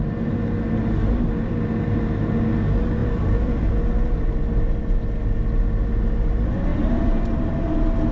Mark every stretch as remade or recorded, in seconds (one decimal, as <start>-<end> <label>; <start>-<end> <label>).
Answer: 0.0-3.0 recorded; 3.0-3.7 remade; 3.7-6.7 recorded; 6.7-7.4 remade; 7.4-8.1 recorded